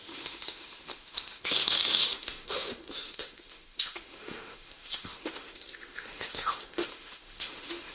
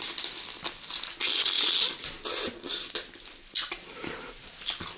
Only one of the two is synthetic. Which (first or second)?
first